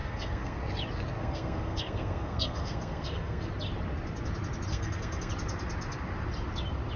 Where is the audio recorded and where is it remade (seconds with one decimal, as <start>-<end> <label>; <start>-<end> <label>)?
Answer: 0.0-0.6 remade; 0.6-1.2 recorded; 1.2-3.5 remade; 3.5-4.7 recorded; 4.7-5.3 remade; 5.3-7.0 recorded